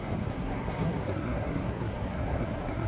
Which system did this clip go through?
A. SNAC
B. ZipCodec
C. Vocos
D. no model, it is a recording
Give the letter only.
A